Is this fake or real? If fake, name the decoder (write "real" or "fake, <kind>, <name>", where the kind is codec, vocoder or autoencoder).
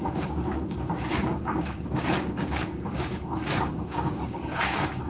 fake, codec, DAC